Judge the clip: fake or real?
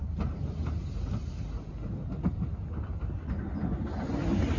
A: real